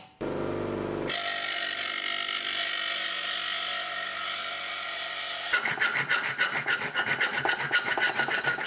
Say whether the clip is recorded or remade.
recorded